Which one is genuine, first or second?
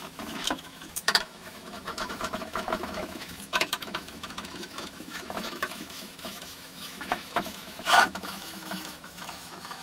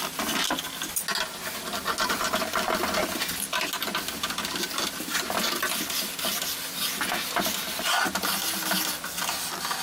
second